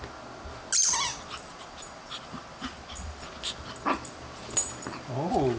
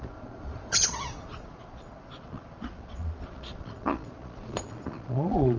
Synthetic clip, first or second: second